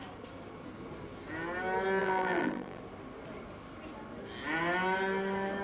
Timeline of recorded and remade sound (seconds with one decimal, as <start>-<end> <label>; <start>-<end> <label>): 0.0-2.0 recorded; 2.0-2.8 remade; 2.8-5.6 recorded